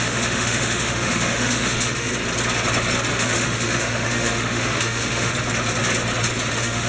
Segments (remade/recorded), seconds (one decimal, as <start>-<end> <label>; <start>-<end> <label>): 0.0-2.1 remade; 2.1-3.1 recorded; 3.1-5.3 remade; 5.3-6.5 recorded; 6.5-6.9 remade